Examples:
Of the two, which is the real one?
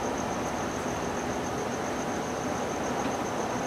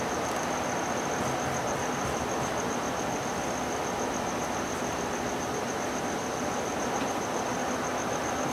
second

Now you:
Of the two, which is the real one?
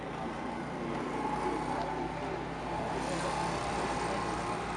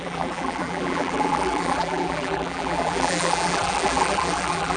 first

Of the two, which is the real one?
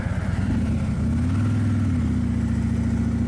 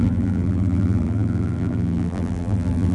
first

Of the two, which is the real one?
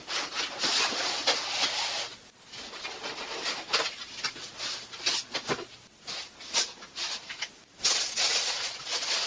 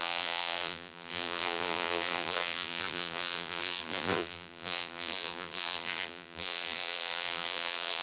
first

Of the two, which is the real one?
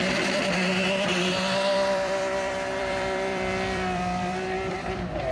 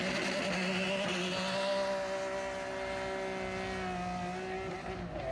second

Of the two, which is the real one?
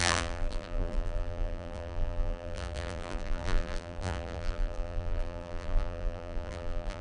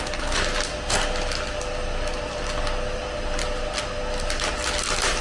second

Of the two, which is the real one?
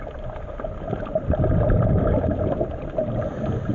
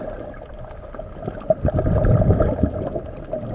second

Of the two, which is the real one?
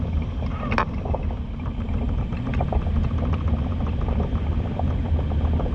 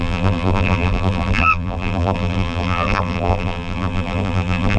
first